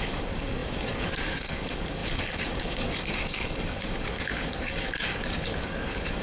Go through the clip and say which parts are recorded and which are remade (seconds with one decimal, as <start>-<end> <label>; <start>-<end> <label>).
0.0-6.2 remade